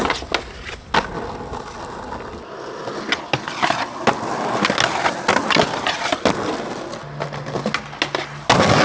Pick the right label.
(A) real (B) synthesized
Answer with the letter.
A